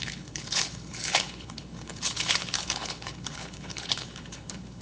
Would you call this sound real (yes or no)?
no